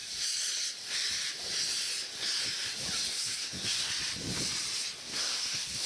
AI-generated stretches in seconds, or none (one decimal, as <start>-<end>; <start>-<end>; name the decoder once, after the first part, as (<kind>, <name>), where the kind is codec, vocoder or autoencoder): 3.1-3.9 (codec, SNAC); 5.0-5.9